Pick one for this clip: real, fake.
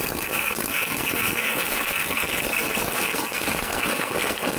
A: fake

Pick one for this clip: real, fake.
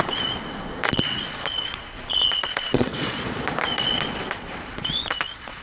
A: fake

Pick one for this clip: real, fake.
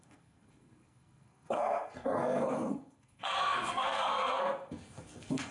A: fake